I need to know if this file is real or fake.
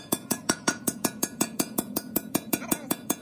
fake